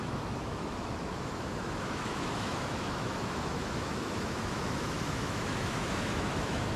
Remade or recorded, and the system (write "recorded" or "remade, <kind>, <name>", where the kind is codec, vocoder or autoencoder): remade, autoencoder, DAC-VAE